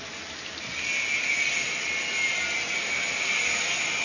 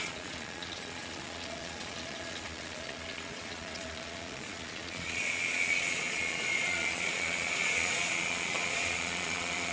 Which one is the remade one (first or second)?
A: second